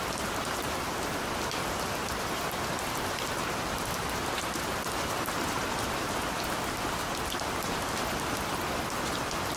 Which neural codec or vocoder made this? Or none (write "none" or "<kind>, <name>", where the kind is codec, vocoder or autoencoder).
none